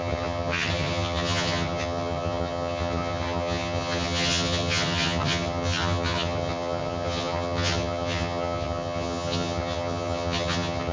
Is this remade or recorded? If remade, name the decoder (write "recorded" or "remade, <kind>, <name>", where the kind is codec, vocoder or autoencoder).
remade, vocoder, HiFi-GAN